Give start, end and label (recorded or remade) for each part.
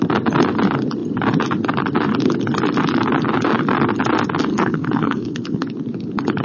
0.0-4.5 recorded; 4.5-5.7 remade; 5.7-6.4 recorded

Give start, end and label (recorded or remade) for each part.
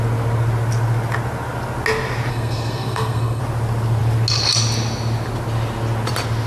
0.0-2.3 recorded; 2.3-3.4 remade; 3.4-6.5 recorded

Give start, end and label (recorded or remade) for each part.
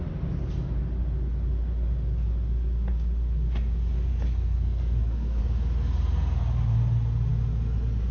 0.0-4.1 recorded; 4.1-5.4 remade; 5.4-8.1 recorded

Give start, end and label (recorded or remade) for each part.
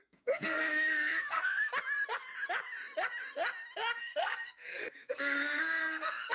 0.0-1.7 remade; 1.7-4.0 recorded; 4.0-6.3 remade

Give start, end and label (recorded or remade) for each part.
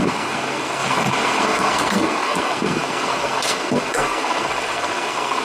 0.0-5.4 remade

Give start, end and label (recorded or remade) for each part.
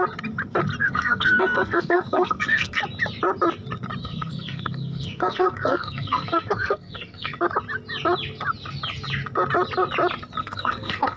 0.0-0.8 recorded; 0.8-2.8 remade; 2.8-4.0 recorded; 4.0-7.4 remade; 7.4-10.4 recorded; 10.4-11.2 remade